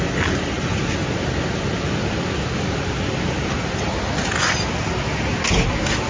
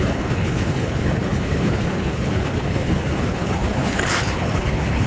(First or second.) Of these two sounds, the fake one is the second